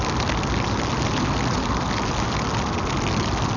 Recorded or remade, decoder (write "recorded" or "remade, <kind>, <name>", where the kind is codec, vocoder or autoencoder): recorded